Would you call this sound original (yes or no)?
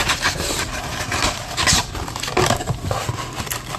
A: yes